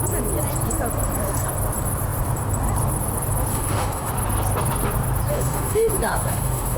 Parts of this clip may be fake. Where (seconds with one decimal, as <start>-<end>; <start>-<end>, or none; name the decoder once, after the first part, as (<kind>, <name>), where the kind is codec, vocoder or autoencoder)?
3.5-4.1 (autoencoder, DAC-VAE); 5.3-6.8